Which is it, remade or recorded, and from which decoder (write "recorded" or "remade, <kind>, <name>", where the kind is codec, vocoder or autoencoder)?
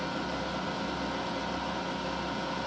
recorded